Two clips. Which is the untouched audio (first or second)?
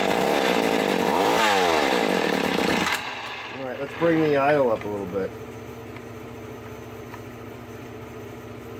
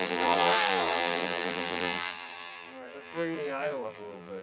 first